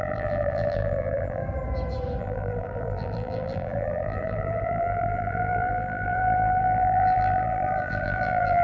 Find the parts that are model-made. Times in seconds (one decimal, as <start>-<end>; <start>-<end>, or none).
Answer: 0.0-1.4; 2.2-8.6